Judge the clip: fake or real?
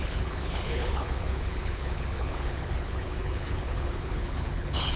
fake